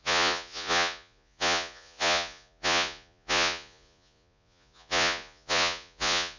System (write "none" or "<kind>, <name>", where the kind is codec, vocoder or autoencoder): vocoder, Vocos